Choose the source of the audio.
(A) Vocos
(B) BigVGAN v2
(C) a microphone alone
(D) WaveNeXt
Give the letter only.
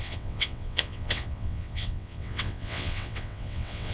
D